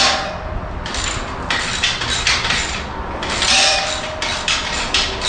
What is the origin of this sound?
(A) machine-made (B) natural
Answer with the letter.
B